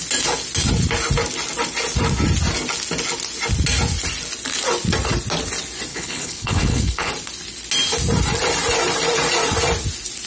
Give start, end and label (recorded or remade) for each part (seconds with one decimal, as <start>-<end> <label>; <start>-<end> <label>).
0.0-5.9 recorded; 5.9-7.1 remade; 7.1-10.3 recorded